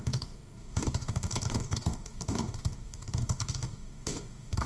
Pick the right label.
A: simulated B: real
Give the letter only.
A